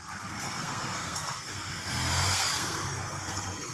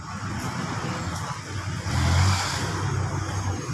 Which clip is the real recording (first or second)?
second